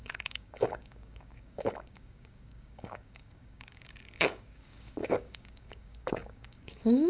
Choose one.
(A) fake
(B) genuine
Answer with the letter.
A